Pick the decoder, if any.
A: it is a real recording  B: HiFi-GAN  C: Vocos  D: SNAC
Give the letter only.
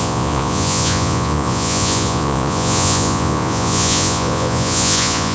C